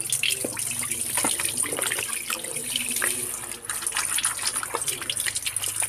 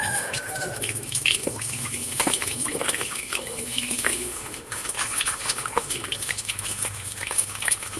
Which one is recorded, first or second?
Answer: first